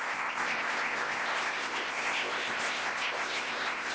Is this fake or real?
fake